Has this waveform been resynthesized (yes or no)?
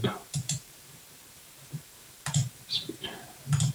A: yes